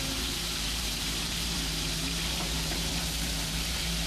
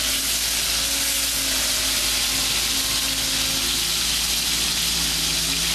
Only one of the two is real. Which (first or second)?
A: second